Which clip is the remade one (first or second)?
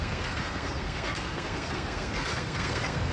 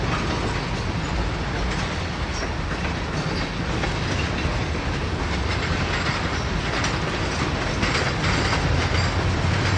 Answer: first